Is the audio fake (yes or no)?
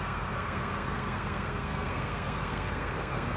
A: yes